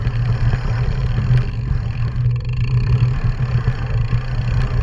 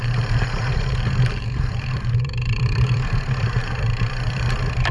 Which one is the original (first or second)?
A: first